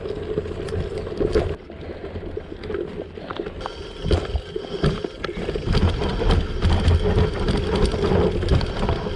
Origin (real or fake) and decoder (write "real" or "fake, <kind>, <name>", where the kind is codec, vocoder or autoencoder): real